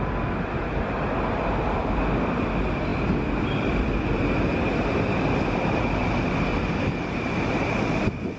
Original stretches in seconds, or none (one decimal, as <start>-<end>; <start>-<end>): 0.0-8.4